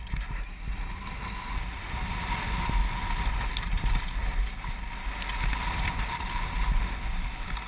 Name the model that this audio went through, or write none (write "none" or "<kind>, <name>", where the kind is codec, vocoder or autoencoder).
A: none